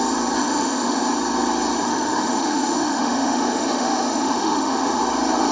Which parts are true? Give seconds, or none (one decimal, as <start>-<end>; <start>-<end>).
0.0-0.4; 1.0-1.8; 5.0-5.5